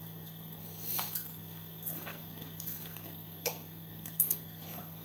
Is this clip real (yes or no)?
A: no